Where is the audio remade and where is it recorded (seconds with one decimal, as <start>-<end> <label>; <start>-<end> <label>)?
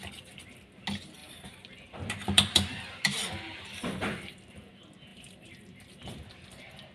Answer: 0.0-1.2 recorded; 1.2-3.8 remade; 3.8-5.1 recorded; 5.1-6.3 remade; 6.3-6.9 recorded